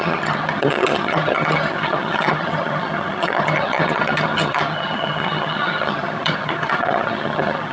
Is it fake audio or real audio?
fake